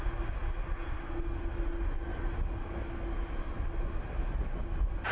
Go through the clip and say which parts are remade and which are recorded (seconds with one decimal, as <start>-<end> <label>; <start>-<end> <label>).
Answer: 0.0-5.1 recorded